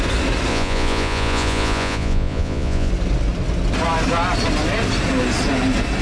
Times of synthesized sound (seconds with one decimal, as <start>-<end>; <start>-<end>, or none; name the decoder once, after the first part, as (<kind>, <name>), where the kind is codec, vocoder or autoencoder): 0.5-2.9 (vocoder, Vocos)